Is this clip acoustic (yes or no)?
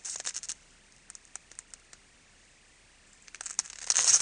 yes